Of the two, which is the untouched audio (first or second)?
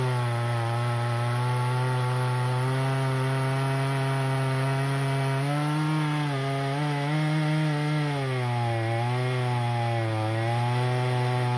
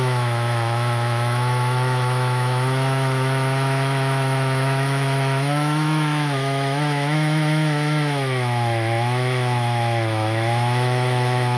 first